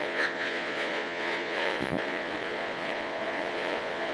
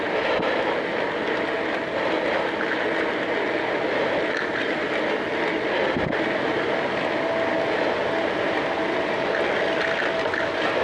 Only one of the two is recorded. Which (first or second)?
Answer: second